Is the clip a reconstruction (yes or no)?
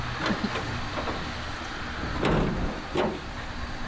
no